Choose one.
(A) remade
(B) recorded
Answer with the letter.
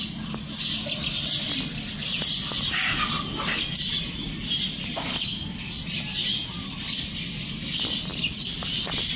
B